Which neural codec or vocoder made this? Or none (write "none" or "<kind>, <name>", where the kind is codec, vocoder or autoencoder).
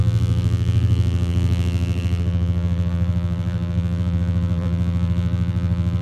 vocoder, BigVGAN v2